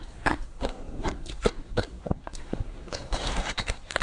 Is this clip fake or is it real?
fake